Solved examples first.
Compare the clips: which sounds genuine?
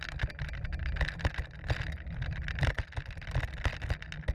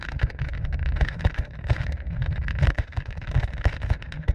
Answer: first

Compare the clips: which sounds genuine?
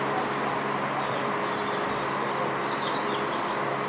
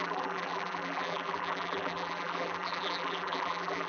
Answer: first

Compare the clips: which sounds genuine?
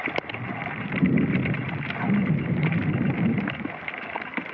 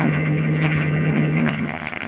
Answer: first